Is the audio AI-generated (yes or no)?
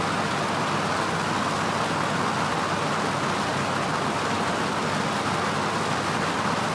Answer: no